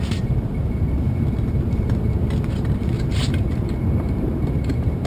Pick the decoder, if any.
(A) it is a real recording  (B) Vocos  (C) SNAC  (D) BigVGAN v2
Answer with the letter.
D